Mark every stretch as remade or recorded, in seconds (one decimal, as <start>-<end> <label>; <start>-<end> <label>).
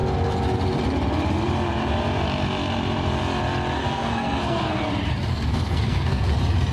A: 0.0-3.8 recorded; 3.8-4.8 remade; 4.8-5.3 recorded; 5.3-6.3 remade; 6.3-6.7 recorded